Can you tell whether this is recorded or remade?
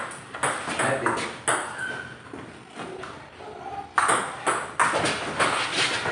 recorded